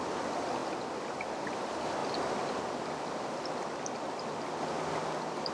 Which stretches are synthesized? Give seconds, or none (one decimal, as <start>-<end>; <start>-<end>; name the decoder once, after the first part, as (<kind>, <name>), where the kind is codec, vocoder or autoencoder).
none